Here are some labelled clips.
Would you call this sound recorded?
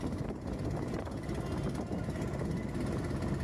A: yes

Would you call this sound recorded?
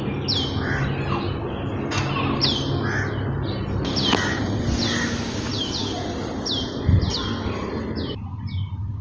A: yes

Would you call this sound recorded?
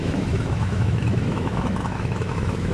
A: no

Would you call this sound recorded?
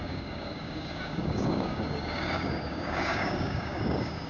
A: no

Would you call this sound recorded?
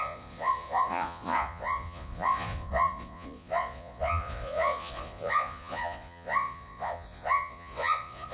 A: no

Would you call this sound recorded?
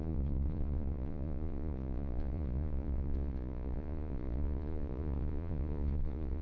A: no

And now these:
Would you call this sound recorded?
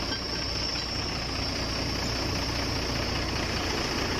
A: yes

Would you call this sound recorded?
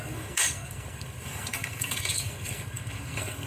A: no